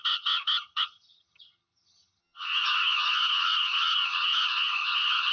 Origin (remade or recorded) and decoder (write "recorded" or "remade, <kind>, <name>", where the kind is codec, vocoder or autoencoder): remade, vocoder, HiFi-GAN